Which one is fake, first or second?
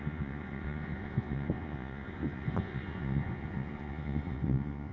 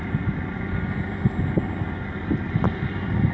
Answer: first